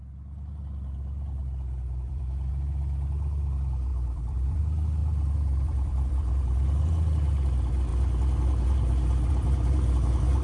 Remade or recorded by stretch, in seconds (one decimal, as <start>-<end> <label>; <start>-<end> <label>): 0.0-1.4 recorded; 1.4-2.5 remade; 2.5-3.9 recorded; 3.9-4.6 remade; 4.6-5.0 recorded; 5.0-6.9 remade; 6.9-10.4 recorded